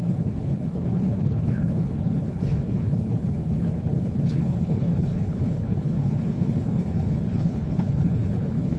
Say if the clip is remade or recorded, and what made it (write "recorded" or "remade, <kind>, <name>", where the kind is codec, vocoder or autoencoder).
remade, codec, HILCodec